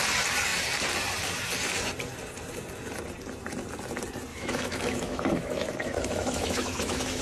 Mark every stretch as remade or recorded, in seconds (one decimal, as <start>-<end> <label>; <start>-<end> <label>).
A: 0.0-4.3 recorded; 4.3-7.2 remade